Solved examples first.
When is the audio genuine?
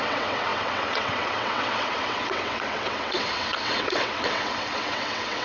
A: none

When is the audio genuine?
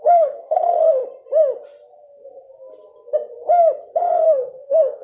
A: 1.0-4.0